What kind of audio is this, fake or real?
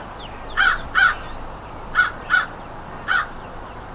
real